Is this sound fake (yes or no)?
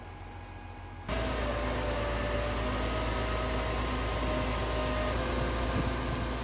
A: no